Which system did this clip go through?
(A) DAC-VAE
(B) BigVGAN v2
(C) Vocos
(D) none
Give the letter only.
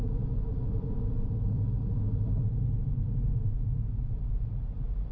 D